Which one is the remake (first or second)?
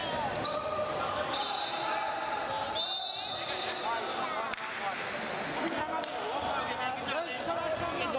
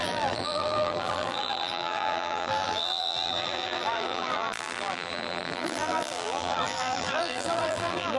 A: second